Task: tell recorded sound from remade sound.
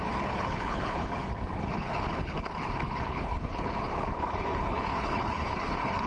remade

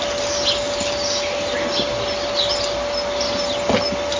recorded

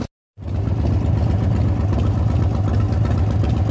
recorded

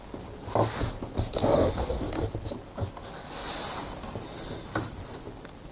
recorded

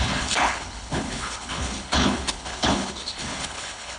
remade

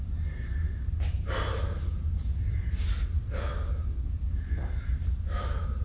recorded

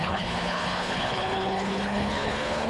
remade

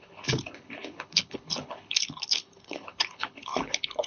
remade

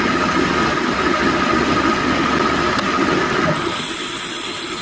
recorded